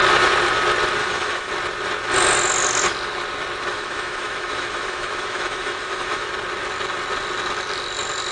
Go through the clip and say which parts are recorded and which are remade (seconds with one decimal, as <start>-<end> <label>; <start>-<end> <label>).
0.0-1.0 recorded; 1.0-1.5 remade; 1.5-3.7 recorded; 3.7-6.3 remade; 6.3-8.3 recorded